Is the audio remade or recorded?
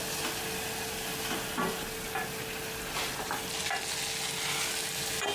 recorded